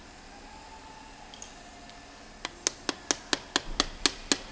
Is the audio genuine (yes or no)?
yes